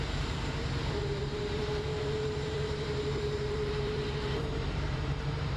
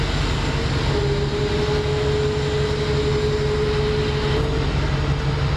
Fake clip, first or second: first